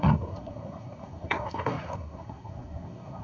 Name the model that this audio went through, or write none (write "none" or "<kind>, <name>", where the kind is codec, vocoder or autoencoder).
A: codec, SNAC